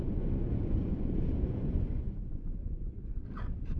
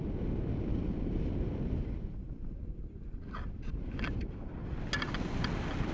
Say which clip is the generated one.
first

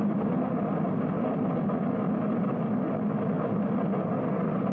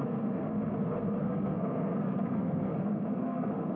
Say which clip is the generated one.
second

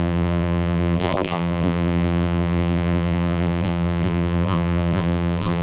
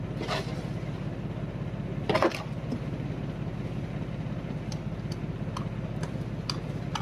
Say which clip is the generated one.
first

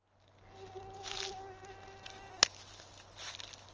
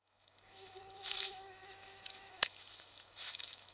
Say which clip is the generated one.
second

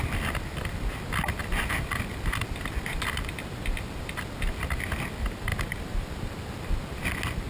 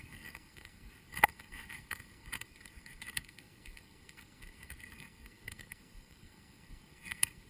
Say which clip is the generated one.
second